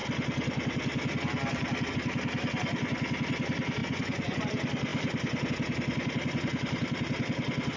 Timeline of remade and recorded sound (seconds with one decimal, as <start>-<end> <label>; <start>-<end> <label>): 0.0-3.8 recorded; 3.8-4.4 remade; 4.4-7.8 recorded